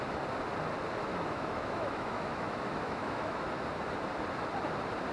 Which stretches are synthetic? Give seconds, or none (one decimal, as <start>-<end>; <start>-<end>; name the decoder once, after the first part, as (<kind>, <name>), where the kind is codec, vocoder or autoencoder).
1.1-3.5 (autoencoder, DAC-VAE)